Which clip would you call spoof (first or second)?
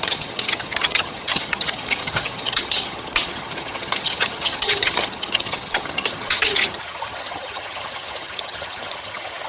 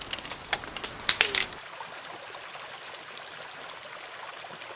first